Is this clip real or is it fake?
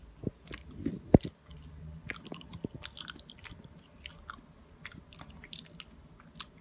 real